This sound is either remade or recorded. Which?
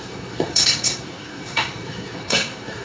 remade